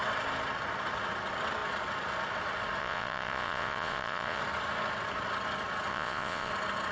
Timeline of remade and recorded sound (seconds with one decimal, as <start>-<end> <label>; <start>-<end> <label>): 0.0-2.8 recorded; 2.8-4.4 remade; 4.4-5.9 recorded; 5.9-6.5 remade; 6.5-6.9 recorded